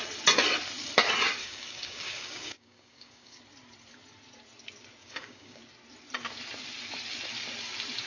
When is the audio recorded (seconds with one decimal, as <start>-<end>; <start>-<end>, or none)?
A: 0.0-1.4; 3.4-5.0; 5.6-8.1